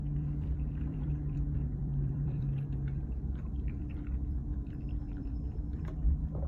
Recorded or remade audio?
remade